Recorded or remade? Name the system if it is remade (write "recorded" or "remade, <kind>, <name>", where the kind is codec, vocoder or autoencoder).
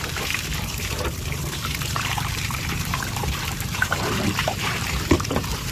remade, vocoder, BigVGAN v2